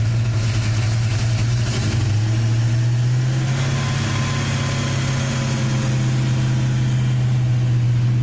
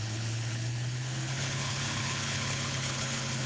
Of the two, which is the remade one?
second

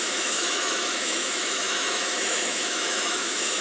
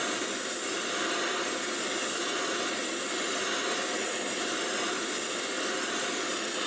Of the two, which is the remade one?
first